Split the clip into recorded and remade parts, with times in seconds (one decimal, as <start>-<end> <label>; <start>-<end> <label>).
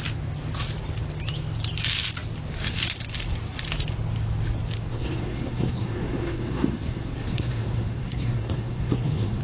0.0-4.9 recorded; 4.9-9.4 remade